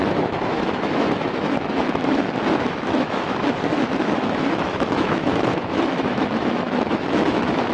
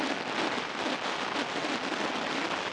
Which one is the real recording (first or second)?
second